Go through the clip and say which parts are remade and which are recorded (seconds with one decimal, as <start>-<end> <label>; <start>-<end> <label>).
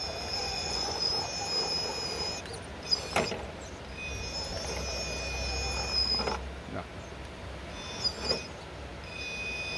0.0-0.4 recorded; 0.4-1.1 remade; 1.1-9.8 recorded